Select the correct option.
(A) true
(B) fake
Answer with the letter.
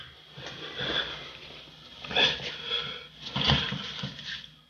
A